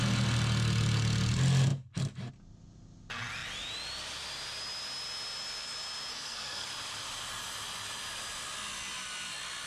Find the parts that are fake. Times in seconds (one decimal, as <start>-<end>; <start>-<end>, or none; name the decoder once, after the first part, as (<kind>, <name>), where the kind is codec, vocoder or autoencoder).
6.1-6.7 (codec, SNAC)